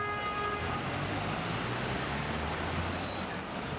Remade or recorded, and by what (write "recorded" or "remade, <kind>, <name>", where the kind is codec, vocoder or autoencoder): recorded